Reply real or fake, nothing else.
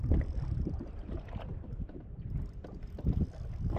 fake